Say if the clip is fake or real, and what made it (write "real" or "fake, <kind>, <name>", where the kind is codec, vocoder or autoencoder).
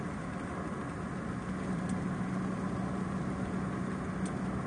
real